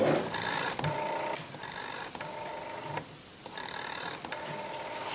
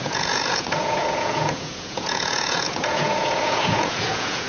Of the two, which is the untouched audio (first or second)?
first